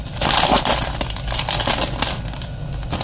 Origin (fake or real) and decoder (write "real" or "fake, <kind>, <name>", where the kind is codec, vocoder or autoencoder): real